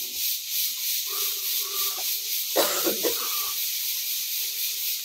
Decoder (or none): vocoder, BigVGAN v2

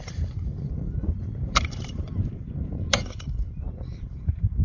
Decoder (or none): vocoder, BigVGAN v2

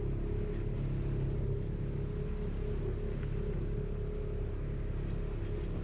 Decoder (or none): none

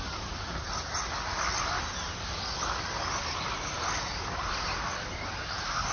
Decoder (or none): none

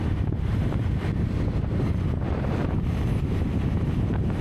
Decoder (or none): vocoder, BigVGAN v2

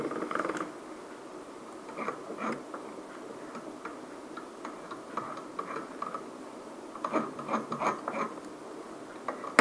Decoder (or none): none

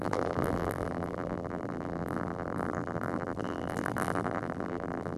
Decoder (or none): vocoder, BigVGAN v2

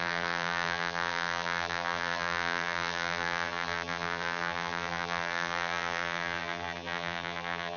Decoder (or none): vocoder, BigVGAN v2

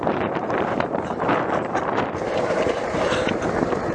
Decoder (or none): vocoder, BigVGAN v2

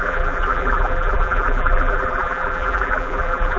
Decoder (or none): vocoder, BigVGAN v2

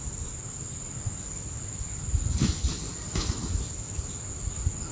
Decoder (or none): none